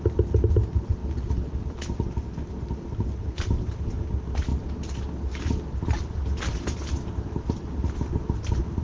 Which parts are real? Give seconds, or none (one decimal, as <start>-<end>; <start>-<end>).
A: 0.0-8.8